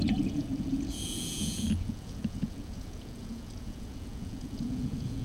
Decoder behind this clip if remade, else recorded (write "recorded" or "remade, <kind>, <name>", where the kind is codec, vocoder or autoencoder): remade, vocoder, Vocos